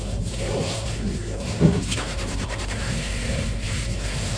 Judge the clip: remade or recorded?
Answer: remade